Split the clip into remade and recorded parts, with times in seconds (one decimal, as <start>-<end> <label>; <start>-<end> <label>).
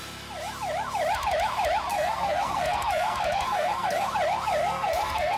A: 0.0-1.9 recorded; 1.9-4.1 remade; 4.1-4.6 recorded; 4.6-5.4 remade